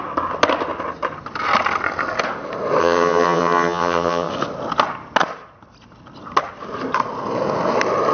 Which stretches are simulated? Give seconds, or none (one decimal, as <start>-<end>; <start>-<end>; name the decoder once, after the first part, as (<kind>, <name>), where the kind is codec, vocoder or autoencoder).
2.8-4.3 (vocoder, HiFi-GAN)